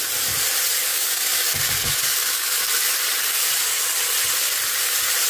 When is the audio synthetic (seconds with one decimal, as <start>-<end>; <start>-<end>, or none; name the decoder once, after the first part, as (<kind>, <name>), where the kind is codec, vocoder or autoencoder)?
0.9-2.6 (codec, DAC)